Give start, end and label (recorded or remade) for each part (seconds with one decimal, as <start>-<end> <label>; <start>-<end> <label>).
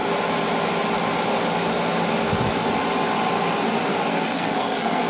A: 0.0-3.9 recorded; 3.9-5.1 remade